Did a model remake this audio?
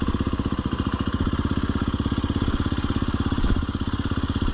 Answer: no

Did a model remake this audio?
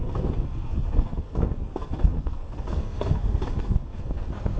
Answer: yes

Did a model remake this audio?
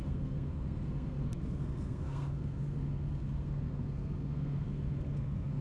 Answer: yes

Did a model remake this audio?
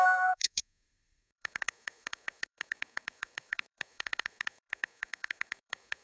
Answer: yes